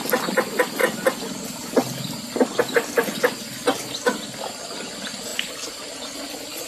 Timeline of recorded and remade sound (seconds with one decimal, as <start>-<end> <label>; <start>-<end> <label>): 0.0-6.7 recorded